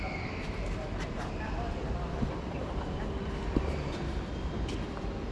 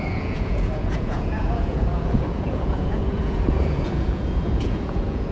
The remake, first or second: second